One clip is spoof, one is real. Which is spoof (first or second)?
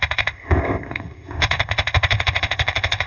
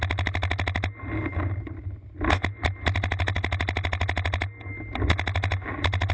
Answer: first